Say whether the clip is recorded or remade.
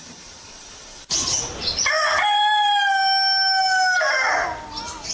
recorded